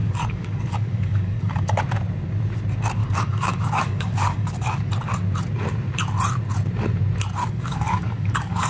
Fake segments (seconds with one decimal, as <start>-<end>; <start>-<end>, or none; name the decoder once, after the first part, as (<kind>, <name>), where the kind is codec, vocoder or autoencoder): 0.0-1.8 (codec, DAC); 3.0-4.9; 7.4-8.7